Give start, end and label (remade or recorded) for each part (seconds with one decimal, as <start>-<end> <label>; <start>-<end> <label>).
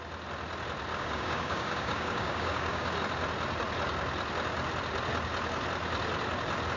0.0-0.9 recorded; 0.9-2.9 remade; 2.9-6.8 recorded